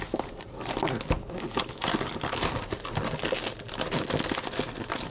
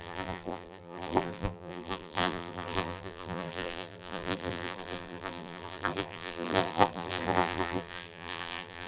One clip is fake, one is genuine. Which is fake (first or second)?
second